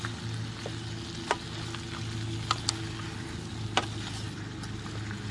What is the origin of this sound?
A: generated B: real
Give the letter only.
B